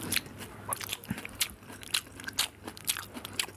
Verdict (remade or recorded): recorded